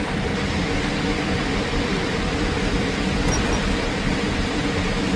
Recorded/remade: remade